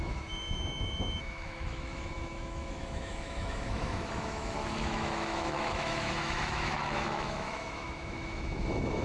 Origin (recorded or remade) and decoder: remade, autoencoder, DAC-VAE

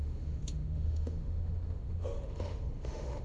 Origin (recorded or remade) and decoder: remade, autoencoder, DAC-VAE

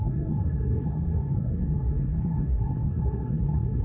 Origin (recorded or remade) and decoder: remade, codec, SNAC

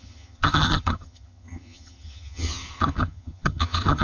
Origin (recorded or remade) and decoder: remade, vocoder, HiFi-GAN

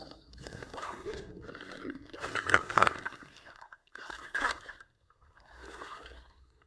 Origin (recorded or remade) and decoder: remade, codec, SNAC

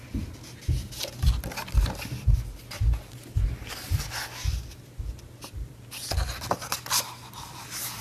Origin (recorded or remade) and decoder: recorded